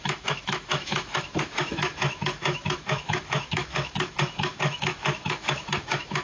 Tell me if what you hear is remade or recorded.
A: remade